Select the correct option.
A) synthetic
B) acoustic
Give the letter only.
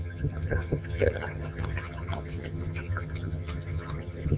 A